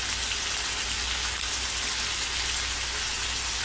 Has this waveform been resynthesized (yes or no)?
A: no